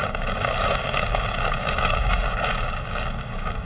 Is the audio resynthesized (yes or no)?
yes